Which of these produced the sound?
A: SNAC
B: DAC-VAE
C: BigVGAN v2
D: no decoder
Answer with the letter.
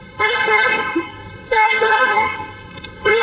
A